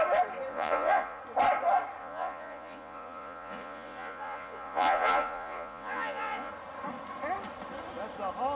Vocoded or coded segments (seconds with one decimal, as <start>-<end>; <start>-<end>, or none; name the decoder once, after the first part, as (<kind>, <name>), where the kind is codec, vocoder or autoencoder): 0.5-1.2 (vocoder, Vocos); 2.0-6.5